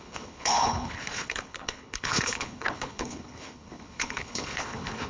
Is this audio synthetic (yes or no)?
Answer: yes